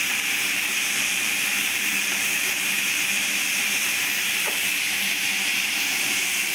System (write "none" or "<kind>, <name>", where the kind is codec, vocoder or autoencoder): vocoder, BigVGAN v2